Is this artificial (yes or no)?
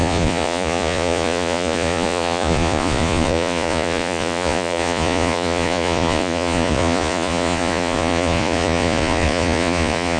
yes